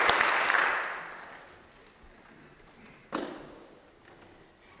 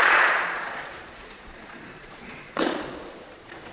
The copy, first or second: second